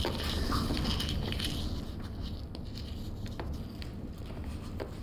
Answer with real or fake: real